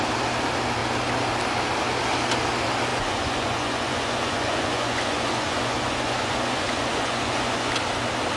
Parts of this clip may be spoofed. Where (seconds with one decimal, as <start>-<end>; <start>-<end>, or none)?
2.9-7.7